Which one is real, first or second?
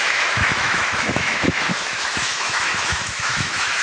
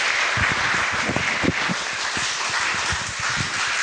second